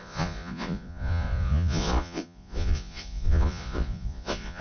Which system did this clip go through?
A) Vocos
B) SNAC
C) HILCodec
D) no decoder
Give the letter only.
A